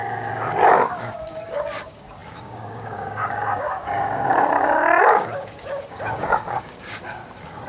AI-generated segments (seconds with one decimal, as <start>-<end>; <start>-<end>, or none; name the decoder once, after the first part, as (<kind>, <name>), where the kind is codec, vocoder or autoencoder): 0.0-7.2 (codec, DAC)